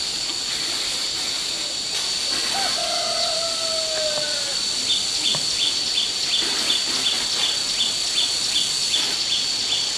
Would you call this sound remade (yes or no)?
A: no